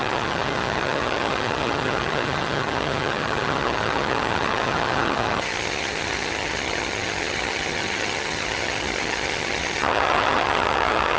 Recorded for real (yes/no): no